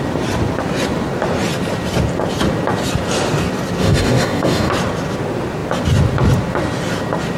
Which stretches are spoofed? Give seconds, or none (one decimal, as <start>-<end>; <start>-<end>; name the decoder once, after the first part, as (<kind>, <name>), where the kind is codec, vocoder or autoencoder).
3.8-4.7 (codec, DAC)